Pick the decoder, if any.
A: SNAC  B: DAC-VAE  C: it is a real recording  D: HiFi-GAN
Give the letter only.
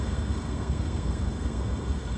A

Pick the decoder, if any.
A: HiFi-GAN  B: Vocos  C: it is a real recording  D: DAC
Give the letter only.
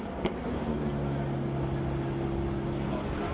C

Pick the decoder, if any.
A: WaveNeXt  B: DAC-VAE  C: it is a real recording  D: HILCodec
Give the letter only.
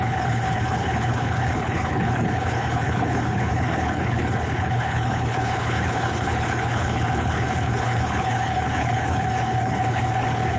D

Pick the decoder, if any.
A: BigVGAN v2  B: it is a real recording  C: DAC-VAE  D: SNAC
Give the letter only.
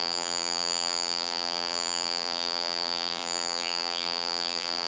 A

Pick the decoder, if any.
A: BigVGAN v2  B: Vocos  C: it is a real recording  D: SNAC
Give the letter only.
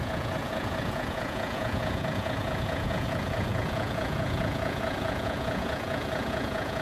B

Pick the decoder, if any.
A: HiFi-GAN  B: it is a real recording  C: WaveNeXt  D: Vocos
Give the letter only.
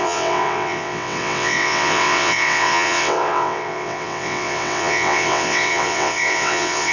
C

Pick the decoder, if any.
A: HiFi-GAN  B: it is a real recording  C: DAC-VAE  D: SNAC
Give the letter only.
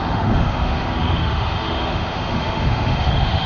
C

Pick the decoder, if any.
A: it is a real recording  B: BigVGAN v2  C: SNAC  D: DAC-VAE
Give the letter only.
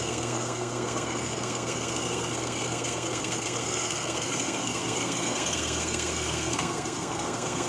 C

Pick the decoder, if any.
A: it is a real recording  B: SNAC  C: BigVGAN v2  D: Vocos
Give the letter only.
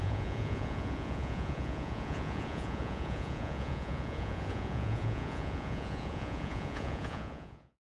D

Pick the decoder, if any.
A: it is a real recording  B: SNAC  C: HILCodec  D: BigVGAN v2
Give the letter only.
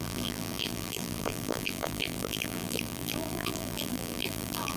D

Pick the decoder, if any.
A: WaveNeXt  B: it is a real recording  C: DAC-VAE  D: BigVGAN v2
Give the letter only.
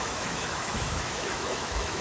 C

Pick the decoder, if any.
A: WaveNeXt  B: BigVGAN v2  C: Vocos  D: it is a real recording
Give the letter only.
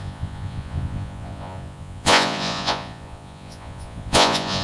C